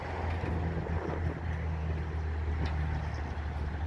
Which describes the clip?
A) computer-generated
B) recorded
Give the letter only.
B